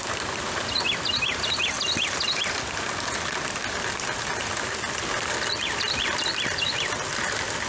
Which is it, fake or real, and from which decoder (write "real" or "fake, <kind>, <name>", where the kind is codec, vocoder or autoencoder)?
real